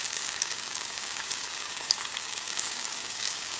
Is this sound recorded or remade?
remade